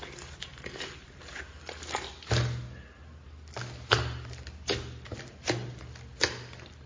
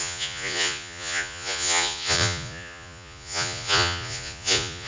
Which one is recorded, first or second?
first